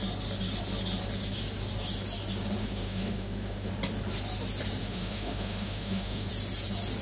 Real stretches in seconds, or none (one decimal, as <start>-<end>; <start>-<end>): 0.0-2.6; 3.7-4.8; 6.3-7.0